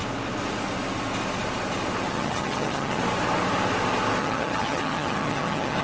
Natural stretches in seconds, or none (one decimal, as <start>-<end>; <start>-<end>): 0.0-2.1; 3.0-4.2